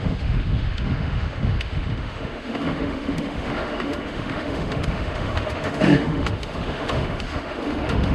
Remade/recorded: remade